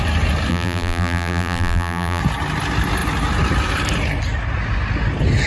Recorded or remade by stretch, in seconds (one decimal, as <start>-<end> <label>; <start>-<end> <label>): 0.0-0.5 recorded; 0.5-2.2 remade; 2.2-5.5 recorded